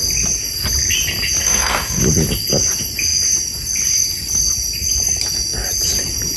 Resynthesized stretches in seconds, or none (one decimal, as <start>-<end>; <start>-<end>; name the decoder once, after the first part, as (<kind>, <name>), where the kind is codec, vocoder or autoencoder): 1.4-2.0 (codec, SNAC)